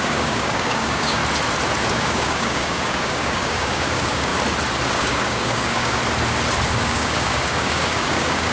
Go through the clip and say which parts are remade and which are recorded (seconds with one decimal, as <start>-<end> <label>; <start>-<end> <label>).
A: 0.0-1.2 remade; 1.2-1.9 recorded; 1.9-4.3 remade; 4.3-4.9 recorded; 4.9-6.0 remade; 6.0-6.7 recorded; 6.7-8.5 remade